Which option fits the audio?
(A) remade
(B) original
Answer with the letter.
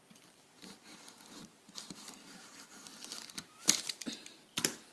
B